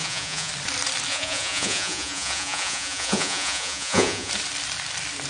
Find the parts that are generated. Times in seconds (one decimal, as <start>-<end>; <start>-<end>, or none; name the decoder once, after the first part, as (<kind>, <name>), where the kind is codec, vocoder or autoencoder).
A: 0.0-0.5 (vocoder, Vocos); 1.1-4.3